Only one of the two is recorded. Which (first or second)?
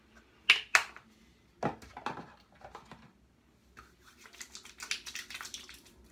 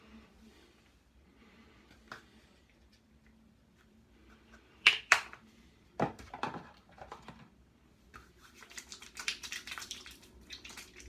first